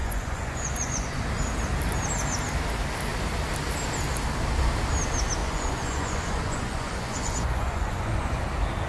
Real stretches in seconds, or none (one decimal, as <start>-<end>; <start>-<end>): 1.2-5.4; 8.4-8.9